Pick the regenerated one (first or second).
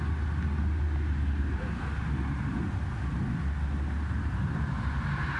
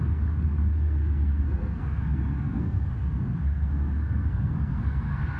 second